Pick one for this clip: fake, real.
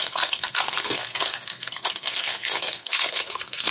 fake